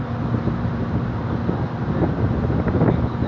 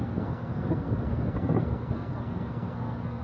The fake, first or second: second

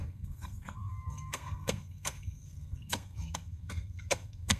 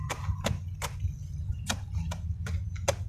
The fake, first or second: first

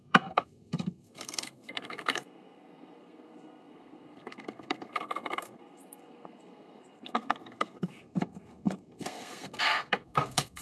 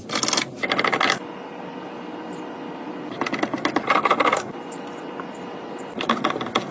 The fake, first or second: first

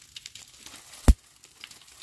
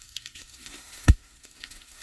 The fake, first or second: second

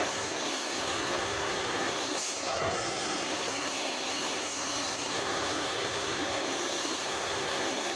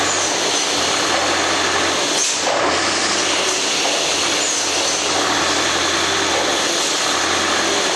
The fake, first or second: first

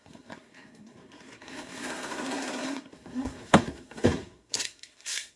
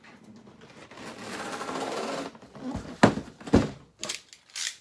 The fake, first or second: first